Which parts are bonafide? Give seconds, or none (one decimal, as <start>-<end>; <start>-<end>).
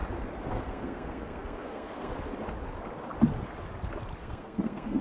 0.0-0.5; 2.1-4.2